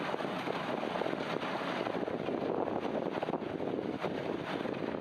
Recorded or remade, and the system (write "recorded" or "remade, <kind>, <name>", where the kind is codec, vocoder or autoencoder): recorded